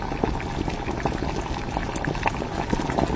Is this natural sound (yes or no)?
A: yes